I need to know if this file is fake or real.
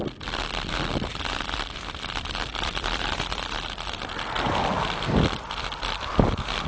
real